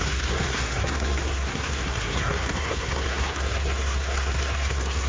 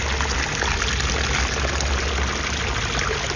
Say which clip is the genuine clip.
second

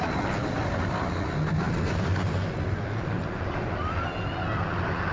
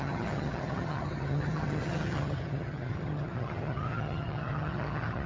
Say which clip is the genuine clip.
first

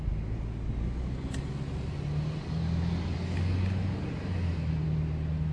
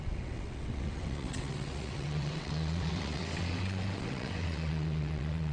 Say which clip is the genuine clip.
first